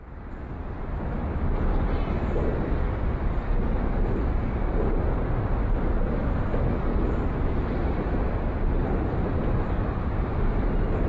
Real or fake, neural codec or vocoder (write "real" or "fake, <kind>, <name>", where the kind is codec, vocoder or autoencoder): real